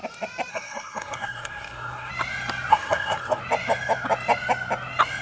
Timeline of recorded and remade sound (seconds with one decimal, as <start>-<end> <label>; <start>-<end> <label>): 0.0-0.5 recorded; 0.5-2.1 remade; 2.1-2.7 recorded; 2.7-3.4 remade; 3.4-5.2 recorded